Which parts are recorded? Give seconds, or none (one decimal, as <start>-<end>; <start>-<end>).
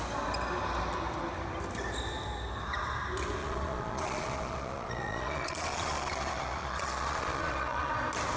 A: 0.0-3.4; 7.9-8.4